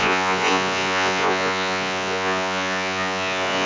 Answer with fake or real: fake